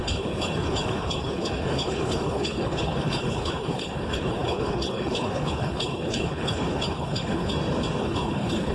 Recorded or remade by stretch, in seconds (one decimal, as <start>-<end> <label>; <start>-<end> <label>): 0.0-7.5 remade; 7.5-8.0 recorded; 8.0-8.7 remade